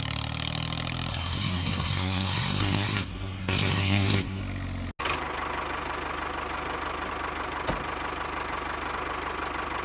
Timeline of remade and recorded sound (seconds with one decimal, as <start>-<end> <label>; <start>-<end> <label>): 0.0-1.1 recorded; 1.1-4.4 remade; 4.4-9.8 recorded